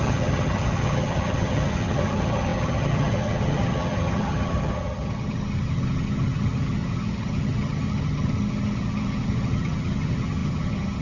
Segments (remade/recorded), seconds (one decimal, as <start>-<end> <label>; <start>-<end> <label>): 0.0-11.0 remade